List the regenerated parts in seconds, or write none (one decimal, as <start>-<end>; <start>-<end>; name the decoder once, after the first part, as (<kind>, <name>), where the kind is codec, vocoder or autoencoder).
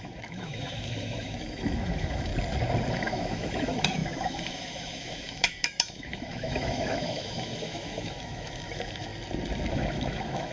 0.0-2.3 (autoencoder, DAC-VAE); 2.9-9.1; 9.7-10.5